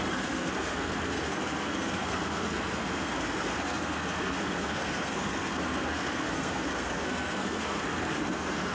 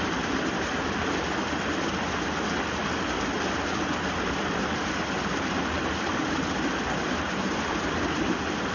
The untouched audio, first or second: second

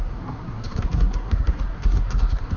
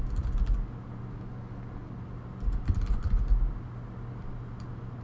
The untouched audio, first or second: second